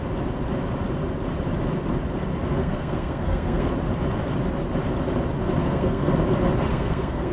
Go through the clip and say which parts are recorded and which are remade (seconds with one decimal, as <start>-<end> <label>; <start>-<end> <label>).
0.0-2.6 recorded; 2.6-3.7 remade; 3.7-5.6 recorded; 5.6-6.1 remade; 6.1-6.7 recorded; 6.7-7.3 remade